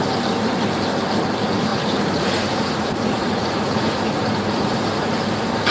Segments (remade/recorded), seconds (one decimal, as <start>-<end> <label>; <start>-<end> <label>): 0.0-1.7 recorded; 1.7-5.1 remade; 5.1-5.7 recorded